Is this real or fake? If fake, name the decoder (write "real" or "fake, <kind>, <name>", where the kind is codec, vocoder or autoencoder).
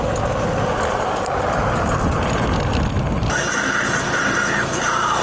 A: real